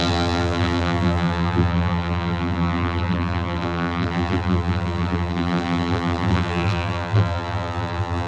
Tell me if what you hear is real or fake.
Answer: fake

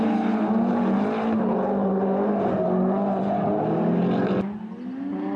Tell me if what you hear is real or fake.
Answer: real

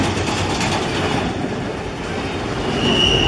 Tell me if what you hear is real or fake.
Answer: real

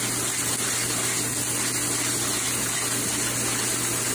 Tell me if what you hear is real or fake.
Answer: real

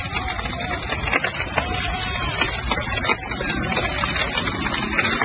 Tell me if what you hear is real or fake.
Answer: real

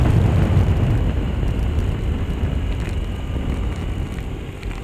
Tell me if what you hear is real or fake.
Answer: real